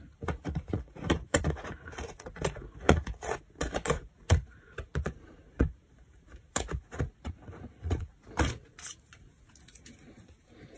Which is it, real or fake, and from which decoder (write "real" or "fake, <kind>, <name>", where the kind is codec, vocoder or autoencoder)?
fake, vocoder, Vocos